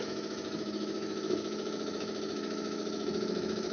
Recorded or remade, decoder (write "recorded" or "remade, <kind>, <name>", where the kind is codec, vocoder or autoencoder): remade, autoencoder, DAC-VAE